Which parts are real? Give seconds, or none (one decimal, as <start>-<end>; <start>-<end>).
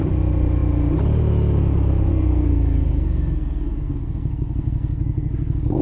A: 0.0-2.1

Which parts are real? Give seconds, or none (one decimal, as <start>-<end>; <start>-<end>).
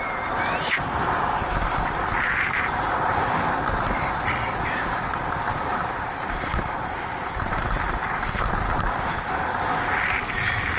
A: 0.0-5.5; 7.7-10.8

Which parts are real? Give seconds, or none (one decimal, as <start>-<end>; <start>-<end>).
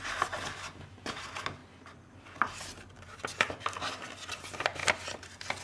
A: 0.0-5.6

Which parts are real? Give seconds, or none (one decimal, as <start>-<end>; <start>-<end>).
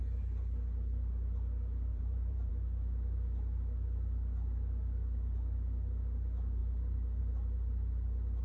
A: 0.0-1.9; 2.5-8.4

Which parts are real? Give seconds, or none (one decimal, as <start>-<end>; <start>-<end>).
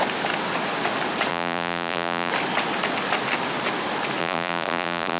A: 0.0-1.3; 2.3-4.2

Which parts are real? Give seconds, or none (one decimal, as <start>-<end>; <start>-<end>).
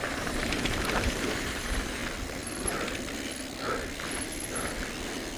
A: 2.0-5.4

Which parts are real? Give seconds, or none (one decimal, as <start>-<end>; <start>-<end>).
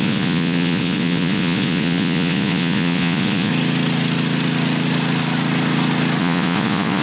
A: 3.5-6.2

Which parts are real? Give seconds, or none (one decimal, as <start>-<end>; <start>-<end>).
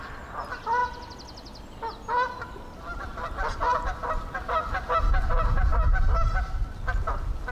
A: 0.0-7.5